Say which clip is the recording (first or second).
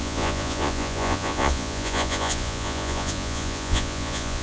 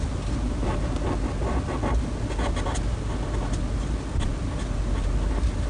second